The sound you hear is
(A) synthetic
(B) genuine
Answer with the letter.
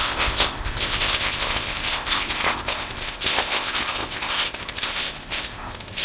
A